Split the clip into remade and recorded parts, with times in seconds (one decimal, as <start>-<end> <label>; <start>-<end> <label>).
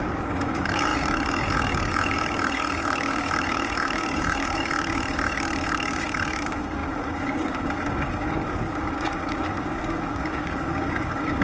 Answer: 0.0-11.4 remade